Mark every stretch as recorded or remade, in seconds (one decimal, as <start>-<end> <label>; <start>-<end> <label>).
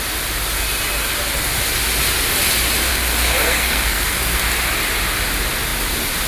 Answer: 0.0-2.9 recorded; 2.9-4.4 remade; 4.4-6.3 recorded